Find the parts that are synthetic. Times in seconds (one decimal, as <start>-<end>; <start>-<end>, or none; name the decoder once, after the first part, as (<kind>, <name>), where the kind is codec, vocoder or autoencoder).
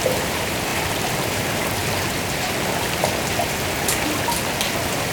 0.0-0.7 (vocoder, BigVGAN v2); 1.2-1.8